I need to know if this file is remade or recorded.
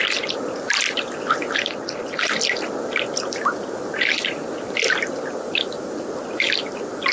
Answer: recorded